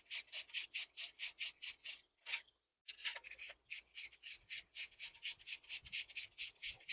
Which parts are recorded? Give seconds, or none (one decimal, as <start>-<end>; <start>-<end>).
0.0-6.9